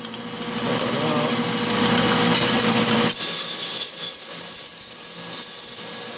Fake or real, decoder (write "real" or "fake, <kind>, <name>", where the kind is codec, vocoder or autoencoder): real